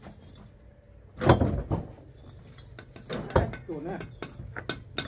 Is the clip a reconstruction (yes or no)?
no